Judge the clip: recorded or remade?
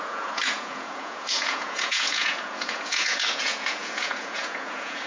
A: remade